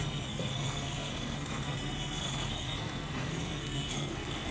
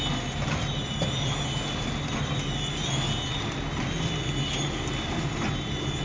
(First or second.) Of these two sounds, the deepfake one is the first